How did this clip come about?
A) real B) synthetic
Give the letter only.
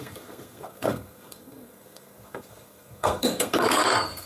B